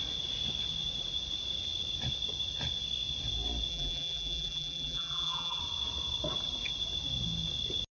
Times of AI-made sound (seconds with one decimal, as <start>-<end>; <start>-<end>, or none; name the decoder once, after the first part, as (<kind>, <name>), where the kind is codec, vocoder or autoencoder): 3.7-5.6 (vocoder, BigVGAN v2)